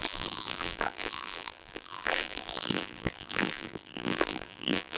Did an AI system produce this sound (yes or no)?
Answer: yes